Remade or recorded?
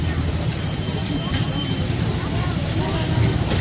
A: remade